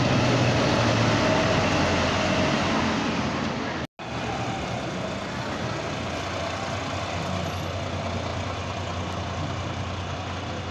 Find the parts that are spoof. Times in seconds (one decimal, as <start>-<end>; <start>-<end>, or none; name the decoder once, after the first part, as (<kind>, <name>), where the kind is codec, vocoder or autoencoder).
none